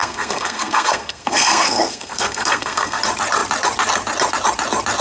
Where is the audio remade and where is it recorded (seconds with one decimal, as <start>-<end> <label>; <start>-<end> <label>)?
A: 0.0-3.0 remade; 3.0-5.0 recorded